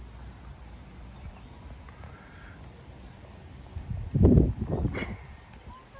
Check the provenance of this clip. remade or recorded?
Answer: recorded